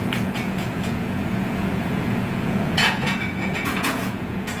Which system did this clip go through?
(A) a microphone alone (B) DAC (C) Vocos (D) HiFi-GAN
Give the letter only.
C